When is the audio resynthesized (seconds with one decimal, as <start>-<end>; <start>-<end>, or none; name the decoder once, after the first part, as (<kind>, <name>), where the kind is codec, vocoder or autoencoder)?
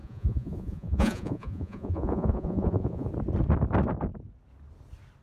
0.0-3.1 (vocoder, Vocos)